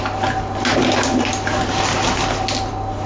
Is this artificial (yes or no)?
no